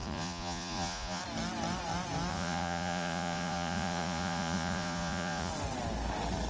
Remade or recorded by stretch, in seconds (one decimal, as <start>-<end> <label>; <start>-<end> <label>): 0.0-1.2 remade; 1.2-2.3 recorded; 2.3-5.5 remade; 5.5-6.5 recorded